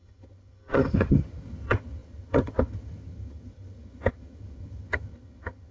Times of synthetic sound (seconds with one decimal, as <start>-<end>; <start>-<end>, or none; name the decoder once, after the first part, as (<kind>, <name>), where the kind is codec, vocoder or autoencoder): 0.0-5.7 (vocoder, HiFi-GAN)